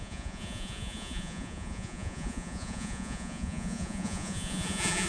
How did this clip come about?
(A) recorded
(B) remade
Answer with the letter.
B